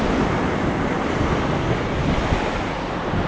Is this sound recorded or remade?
recorded